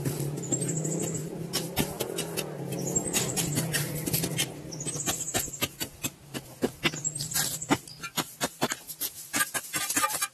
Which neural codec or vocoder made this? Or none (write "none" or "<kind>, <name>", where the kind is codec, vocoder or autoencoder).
none